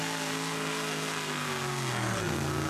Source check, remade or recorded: remade